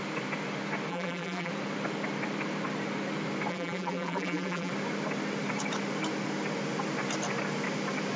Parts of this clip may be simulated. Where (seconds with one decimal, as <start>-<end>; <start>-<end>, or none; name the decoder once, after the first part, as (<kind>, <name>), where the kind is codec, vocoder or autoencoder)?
0.9-1.5 (vocoder, BigVGAN v2); 3.5-4.7